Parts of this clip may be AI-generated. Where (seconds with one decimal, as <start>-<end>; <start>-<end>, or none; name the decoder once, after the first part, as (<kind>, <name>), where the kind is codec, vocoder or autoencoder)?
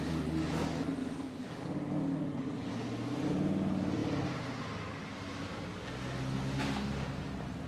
1.0-2.7 (codec, DAC)